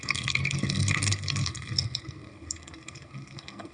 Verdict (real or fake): fake